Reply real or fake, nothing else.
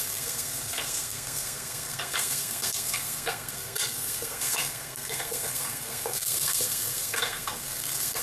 fake